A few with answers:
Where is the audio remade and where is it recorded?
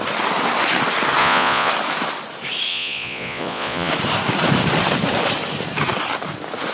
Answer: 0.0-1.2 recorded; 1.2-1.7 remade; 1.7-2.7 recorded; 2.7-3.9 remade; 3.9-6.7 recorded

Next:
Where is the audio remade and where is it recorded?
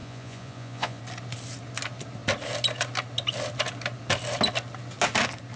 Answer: 0.0-1.0 remade; 1.0-5.6 recorded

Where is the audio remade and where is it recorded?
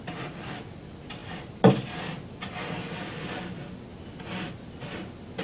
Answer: 0.0-5.4 recorded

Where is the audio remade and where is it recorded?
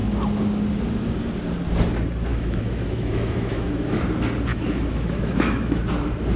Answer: 0.0-2.3 recorded; 2.3-4.0 remade; 4.0-4.5 recorded; 4.5-5.8 remade; 5.8-6.4 recorded